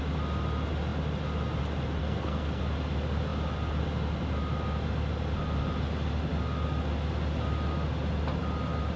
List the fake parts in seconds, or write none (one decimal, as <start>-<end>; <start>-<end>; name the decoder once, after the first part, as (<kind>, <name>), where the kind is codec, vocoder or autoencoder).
2.0-2.6 (codec, SNAC)